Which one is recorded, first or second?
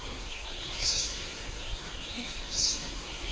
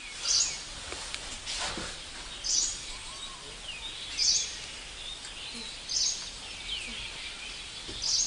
second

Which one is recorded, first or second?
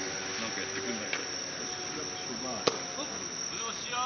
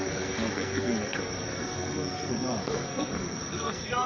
first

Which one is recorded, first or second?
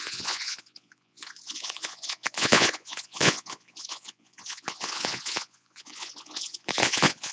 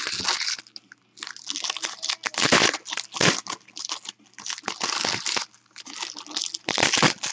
second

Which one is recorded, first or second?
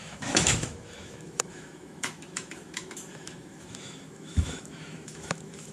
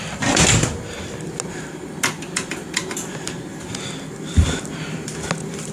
second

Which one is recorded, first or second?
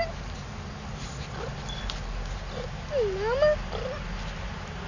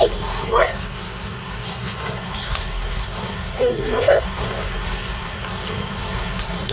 first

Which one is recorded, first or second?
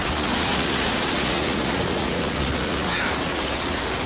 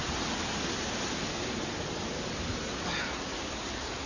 second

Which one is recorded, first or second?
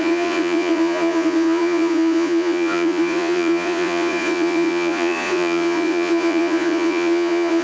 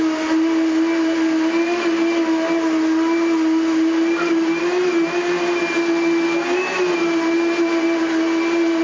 second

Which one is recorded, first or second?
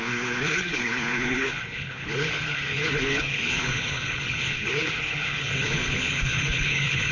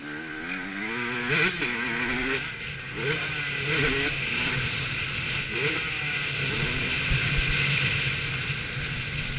second